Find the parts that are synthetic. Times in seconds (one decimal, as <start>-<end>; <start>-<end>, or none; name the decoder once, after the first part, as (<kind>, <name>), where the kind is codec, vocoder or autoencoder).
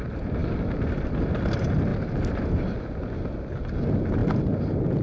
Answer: none